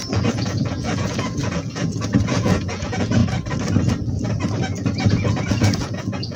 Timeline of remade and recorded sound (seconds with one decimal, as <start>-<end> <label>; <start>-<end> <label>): 0.0-3.2 remade; 3.2-5.1 recorded; 5.1-6.4 remade